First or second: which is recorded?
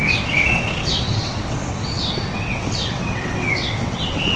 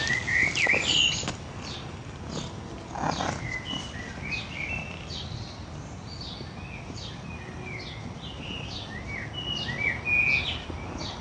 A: second